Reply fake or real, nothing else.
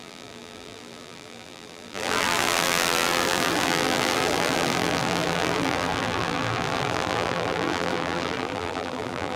fake